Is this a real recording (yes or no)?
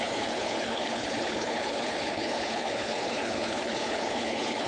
no